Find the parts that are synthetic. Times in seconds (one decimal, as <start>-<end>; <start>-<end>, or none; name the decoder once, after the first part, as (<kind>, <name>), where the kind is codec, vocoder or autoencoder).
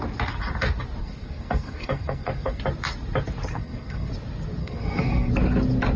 1.0-2.6 (codec, SNAC); 3.5-4.1; 4.6-5.3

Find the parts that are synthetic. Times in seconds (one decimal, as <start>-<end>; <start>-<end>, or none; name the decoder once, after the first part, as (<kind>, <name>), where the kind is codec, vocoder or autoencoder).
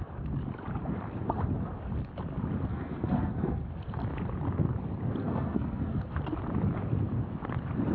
2.7-3.7 (codec, SNAC); 5.2-6.0